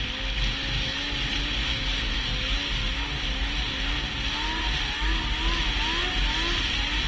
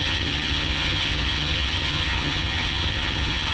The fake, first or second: second